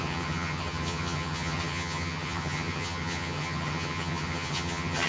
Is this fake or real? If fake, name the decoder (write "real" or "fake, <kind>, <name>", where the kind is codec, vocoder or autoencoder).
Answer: fake, vocoder, HiFi-GAN